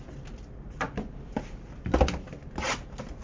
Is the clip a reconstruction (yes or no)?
no